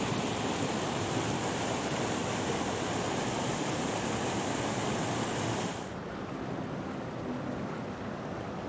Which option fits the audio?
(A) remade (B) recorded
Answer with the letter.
B